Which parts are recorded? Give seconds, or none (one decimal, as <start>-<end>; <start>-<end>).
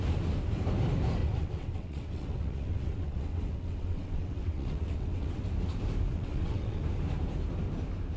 0.0-1.2; 5.4-6.1; 6.8-8.2